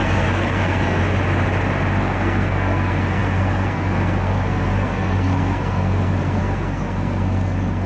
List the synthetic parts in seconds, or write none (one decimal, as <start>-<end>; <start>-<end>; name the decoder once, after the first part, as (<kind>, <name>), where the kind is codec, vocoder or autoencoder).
0.0-1.0 (codec, SNAC); 2.0-7.9